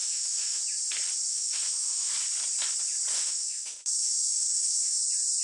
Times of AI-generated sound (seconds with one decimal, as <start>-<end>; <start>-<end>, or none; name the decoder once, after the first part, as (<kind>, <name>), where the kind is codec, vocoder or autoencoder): 0.0-0.6 (autoencoder, DAC-VAE); 1.3-2.1; 3.1-5.0